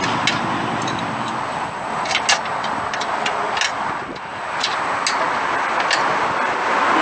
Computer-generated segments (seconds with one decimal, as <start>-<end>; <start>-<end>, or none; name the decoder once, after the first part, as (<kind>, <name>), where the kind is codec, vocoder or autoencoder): 1.5-2.2 (vocoder, BigVGAN v2); 4.3-5.0